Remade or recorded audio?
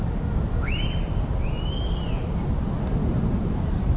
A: recorded